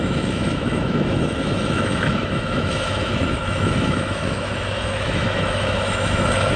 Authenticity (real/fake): fake